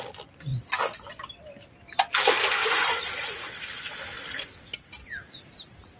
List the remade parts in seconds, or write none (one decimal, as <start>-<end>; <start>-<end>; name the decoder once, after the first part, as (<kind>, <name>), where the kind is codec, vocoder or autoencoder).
2.6-3.5 (vocoder, Vocos)